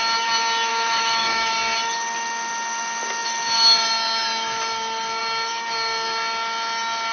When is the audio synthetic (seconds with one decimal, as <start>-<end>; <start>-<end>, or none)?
0.7-1.5